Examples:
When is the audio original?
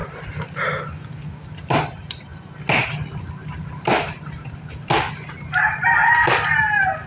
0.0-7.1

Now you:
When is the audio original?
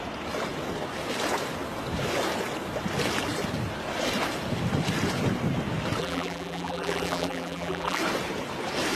0.0-6.0; 8.0-8.9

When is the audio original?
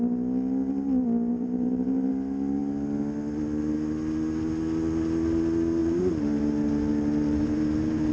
0.0-1.3; 2.1-5.8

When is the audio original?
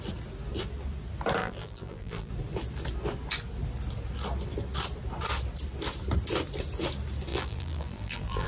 0.0-1.4; 2.3-7.3